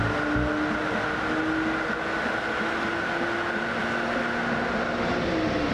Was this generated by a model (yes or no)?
no